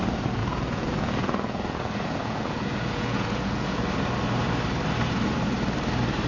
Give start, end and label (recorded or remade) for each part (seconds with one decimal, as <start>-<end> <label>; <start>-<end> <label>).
0.0-0.4 recorded; 0.4-3.8 remade; 3.8-6.3 recorded